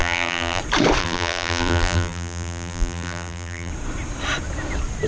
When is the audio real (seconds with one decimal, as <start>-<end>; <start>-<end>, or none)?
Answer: 0.6-1.0; 3.7-5.1

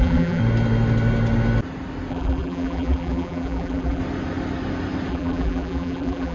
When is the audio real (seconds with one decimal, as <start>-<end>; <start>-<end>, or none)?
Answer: 0.4-2.1; 4.0-5.1